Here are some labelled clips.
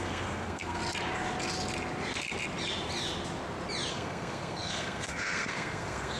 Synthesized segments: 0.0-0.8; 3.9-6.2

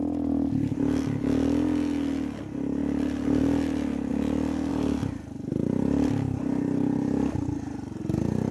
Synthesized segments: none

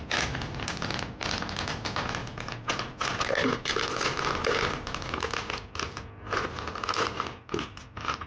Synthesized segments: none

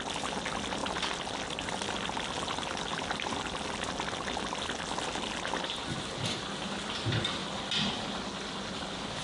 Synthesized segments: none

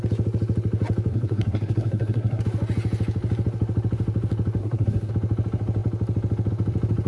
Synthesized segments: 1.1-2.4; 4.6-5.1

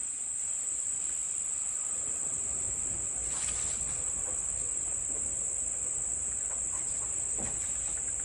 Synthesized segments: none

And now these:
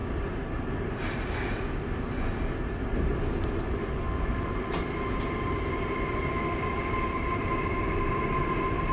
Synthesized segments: none